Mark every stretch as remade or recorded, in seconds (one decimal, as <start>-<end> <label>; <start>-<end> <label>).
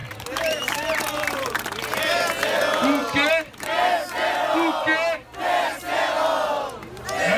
0.0-2.0 remade; 2.0-7.4 recorded